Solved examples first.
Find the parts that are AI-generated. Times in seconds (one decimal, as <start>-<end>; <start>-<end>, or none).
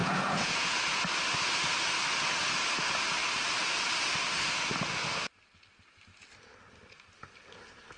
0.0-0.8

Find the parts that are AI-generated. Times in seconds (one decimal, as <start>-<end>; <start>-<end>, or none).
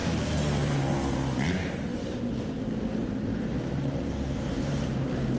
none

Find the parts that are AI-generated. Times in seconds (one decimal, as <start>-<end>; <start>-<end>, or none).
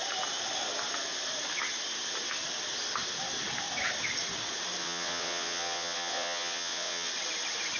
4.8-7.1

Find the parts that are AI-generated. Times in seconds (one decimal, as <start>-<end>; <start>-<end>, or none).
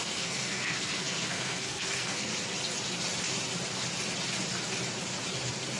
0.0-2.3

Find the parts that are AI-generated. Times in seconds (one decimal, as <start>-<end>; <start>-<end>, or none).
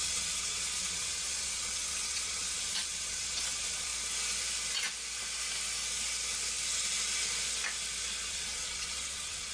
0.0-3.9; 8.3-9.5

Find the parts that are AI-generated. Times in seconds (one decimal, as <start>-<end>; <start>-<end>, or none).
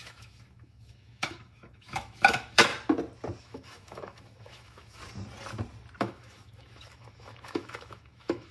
0.0-2.7; 3.4-5.0; 6.0-8.5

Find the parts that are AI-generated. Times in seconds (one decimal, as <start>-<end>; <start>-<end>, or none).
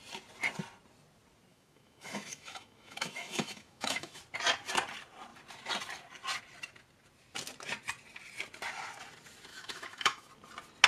1.5-4.2; 9.5-10.3